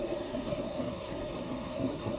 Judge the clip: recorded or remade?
remade